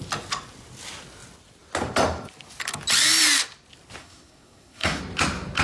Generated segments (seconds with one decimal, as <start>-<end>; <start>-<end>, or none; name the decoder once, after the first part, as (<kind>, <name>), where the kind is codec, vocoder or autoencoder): 4.0-5.0 (codec, SNAC)